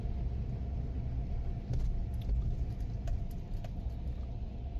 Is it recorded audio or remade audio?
recorded